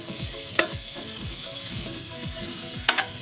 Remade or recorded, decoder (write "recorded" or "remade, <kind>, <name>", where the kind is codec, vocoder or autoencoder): remade, codec, SNAC